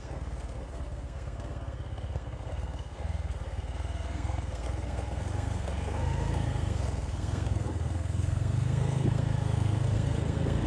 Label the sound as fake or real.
fake